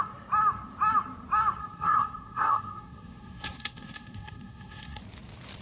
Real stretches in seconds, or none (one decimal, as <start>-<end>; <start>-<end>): 0.0-1.6; 5.0-5.6